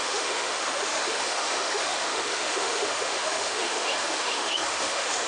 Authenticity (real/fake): fake